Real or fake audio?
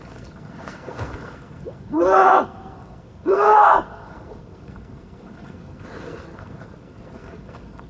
fake